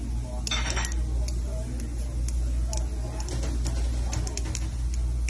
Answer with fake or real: real